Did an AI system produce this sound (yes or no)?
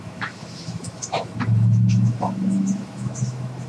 yes